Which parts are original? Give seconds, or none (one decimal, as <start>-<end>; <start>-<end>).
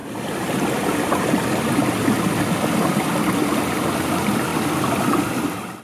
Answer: 3.3-4.5